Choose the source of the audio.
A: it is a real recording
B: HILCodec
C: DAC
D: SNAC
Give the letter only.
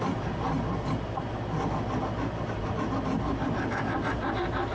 A